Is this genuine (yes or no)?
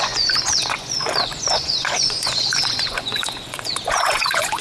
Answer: no